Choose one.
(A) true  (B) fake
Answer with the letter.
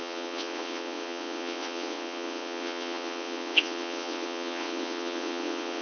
B